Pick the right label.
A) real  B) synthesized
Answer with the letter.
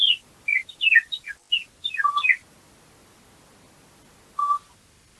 A